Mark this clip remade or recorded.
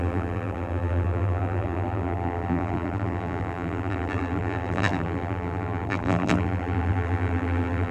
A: remade